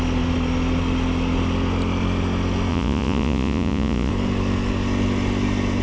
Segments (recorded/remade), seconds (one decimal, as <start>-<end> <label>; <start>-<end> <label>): 0.0-2.7 recorded; 2.7-4.1 remade; 4.1-5.8 recorded